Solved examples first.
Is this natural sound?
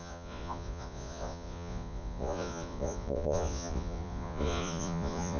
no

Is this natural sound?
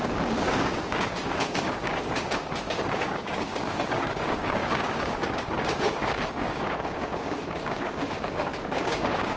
no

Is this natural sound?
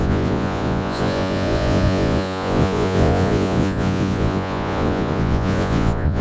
no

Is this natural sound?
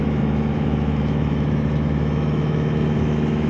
no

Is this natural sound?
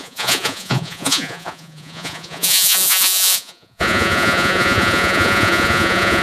no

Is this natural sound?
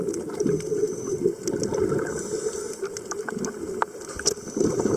yes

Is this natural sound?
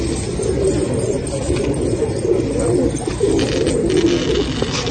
yes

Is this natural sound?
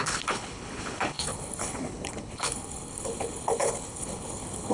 no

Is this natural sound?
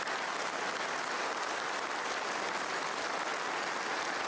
yes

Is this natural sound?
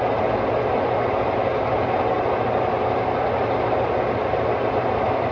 yes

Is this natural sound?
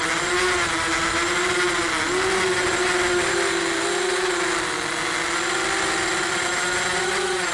yes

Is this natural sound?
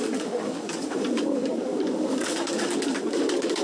no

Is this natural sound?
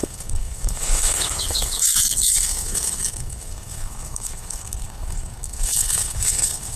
no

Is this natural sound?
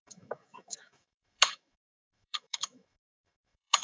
no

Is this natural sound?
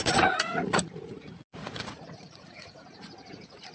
no